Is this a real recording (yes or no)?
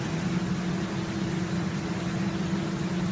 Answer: yes